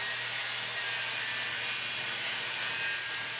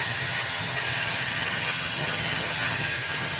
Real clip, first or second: first